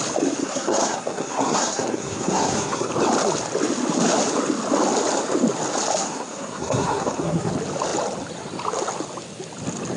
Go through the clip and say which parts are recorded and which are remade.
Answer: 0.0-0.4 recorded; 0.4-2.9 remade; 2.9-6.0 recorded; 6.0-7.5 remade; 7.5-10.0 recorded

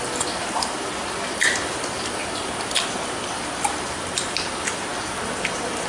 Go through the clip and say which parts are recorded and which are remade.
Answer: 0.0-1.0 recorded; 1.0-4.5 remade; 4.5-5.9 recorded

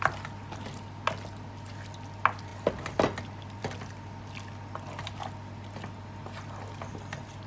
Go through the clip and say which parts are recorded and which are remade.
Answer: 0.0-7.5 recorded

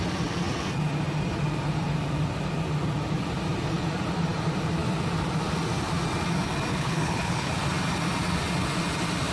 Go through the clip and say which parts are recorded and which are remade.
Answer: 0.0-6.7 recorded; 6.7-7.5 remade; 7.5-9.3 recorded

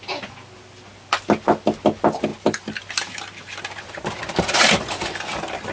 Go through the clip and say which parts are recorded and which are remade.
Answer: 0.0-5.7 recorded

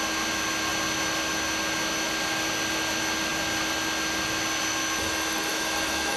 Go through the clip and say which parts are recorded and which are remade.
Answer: 0.0-5.5 recorded; 5.5-6.2 remade